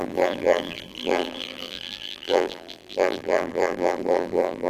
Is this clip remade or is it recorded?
remade